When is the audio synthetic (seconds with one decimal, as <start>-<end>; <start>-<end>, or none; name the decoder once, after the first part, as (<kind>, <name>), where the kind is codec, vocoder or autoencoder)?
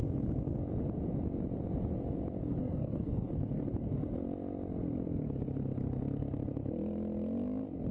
2.6-3.6 (codec, SNAC)